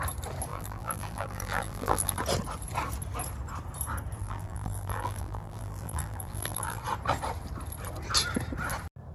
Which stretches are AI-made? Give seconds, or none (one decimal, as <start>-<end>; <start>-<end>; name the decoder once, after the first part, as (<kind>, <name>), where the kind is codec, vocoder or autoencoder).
0.5-2.2 (vocoder, BigVGAN v2); 4.2-6.8